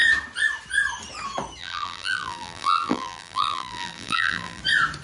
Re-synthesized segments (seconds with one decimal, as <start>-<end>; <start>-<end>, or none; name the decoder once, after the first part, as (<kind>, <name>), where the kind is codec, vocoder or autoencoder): 1.6-4.6 (vocoder, BigVGAN v2)